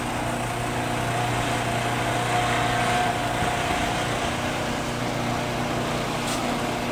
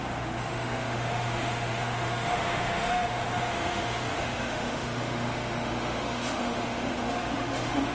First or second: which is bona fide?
first